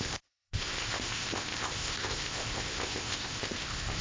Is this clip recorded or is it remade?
remade